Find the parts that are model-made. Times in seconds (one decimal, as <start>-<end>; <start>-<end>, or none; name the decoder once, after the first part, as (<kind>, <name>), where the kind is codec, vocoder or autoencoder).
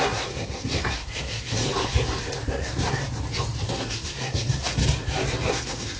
0.0-1.6 (codec, SNAC); 2.5-3.0; 3.7-4.8; 5.5-6.0